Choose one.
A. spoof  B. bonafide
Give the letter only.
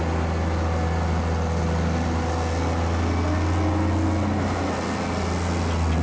B